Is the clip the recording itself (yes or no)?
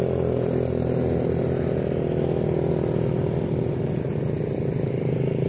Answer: yes